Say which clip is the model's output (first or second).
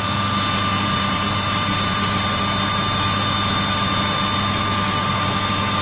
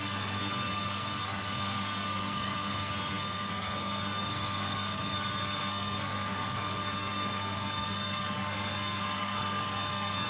second